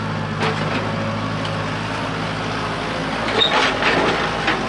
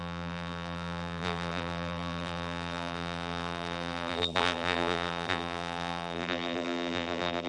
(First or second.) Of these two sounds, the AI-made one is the second